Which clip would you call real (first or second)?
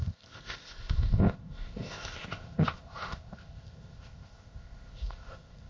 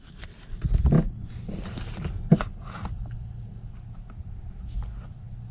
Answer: second